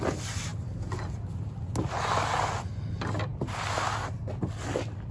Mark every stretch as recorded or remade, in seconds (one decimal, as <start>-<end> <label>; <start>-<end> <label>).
0.0-5.1 recorded